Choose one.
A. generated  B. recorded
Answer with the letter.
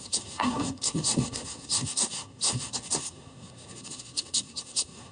A